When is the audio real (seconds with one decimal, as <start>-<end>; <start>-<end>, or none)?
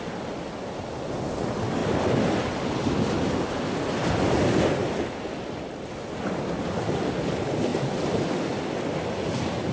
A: 0.0-9.7